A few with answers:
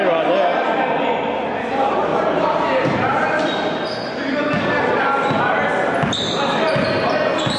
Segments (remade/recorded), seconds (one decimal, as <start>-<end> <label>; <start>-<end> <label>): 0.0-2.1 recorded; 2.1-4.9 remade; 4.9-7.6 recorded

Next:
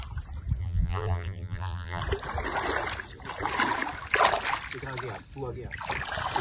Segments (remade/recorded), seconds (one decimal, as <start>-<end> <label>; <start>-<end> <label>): 0.0-0.6 recorded; 0.6-2.0 remade; 2.0-6.4 recorded

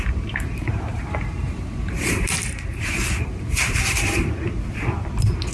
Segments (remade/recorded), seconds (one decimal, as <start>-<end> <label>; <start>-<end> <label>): 0.0-0.9 recorded; 0.9-4.2 remade; 4.2-5.5 recorded